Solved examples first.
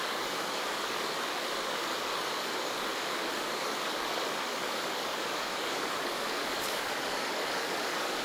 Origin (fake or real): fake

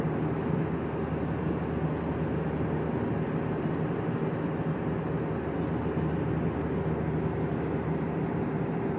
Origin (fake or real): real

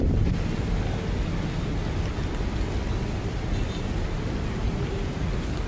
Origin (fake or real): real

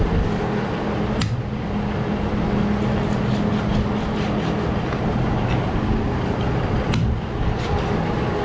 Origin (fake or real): real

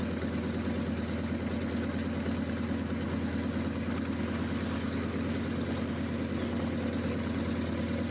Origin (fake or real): real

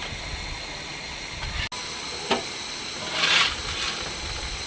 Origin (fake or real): real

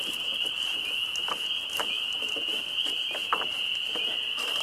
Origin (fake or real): real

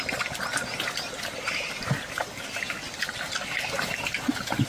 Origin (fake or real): real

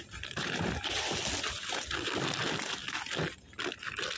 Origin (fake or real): real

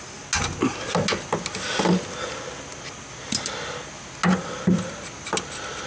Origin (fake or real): real